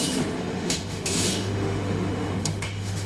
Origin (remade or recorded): remade